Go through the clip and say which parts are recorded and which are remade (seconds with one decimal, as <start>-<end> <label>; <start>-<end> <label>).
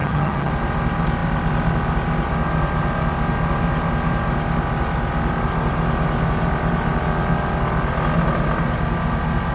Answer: 0.0-0.5 remade; 0.5-9.5 recorded